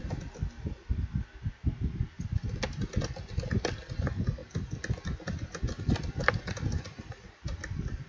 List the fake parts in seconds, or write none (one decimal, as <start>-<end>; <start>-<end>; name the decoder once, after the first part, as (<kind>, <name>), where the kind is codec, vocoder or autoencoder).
none